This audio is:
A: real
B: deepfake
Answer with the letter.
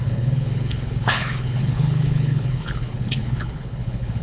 B